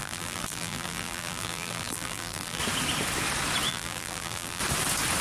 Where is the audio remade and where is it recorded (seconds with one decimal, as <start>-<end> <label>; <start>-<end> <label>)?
0.0-2.6 remade; 2.6-3.7 recorded; 3.7-4.6 remade; 4.6-5.2 recorded